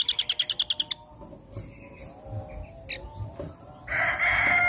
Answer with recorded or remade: recorded